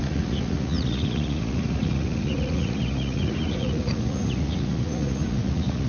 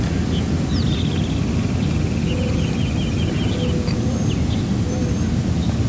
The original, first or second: second